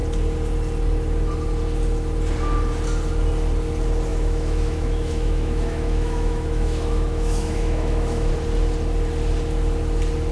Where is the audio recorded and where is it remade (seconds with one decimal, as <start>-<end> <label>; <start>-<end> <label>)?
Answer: 0.0-4.1 recorded; 4.1-8.3 remade; 8.3-10.3 recorded